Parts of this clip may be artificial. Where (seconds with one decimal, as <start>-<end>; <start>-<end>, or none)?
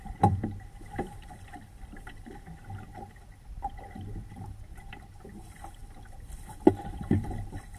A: 0.0-7.8